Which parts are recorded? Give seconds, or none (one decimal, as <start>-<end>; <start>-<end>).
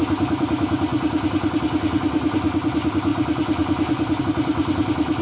0.0-5.2